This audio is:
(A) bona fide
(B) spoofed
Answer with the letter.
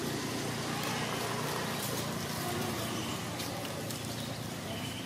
A